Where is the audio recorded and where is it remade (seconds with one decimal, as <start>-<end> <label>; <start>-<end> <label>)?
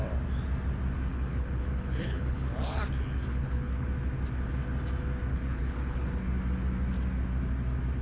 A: 0.0-1.1 recorded; 1.1-2.8 remade; 2.8-3.3 recorded; 3.3-3.9 remade; 3.9-5.3 recorded; 5.3-6.2 remade; 6.2-8.0 recorded